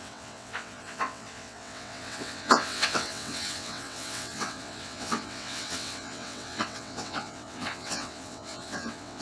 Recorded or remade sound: remade